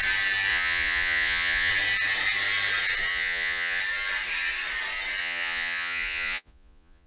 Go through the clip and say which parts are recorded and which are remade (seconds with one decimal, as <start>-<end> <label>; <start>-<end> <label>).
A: 0.0-0.5 recorded; 0.5-1.7 remade; 1.7-3.1 recorded; 3.1-3.8 remade; 3.8-5.2 recorded; 5.2-7.1 remade